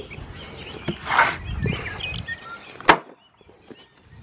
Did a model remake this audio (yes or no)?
no